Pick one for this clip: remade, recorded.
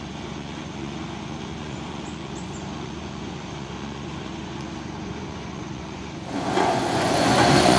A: remade